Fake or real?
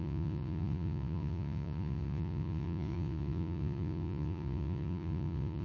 fake